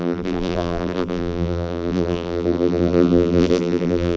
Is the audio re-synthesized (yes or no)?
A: yes